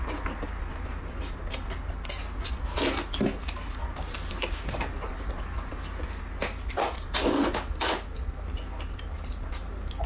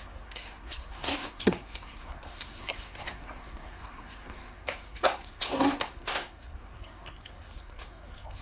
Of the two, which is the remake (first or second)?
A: second